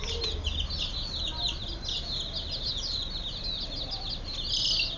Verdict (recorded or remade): recorded